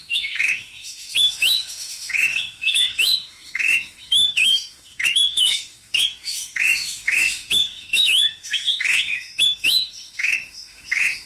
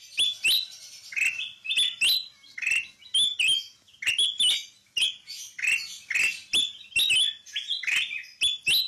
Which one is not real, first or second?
first